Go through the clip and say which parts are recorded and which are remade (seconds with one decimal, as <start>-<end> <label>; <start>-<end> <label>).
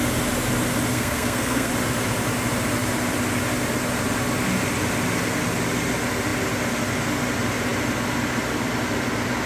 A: 0.0-0.9 recorded; 0.9-1.7 remade; 1.7-9.5 recorded